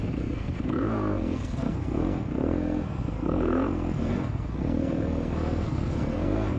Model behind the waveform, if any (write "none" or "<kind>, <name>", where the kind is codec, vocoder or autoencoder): codec, SNAC